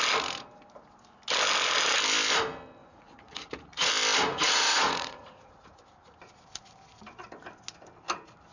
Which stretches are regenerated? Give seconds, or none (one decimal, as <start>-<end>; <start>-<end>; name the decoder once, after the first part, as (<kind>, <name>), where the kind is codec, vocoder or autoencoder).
2.8-3.9 (vocoder, Vocos); 4.3-5.8